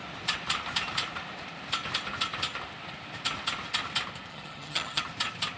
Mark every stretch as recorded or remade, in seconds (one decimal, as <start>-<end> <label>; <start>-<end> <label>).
0.0-4.3 recorded; 4.3-5.0 remade; 5.0-5.6 recorded